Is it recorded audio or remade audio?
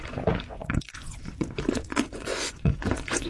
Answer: remade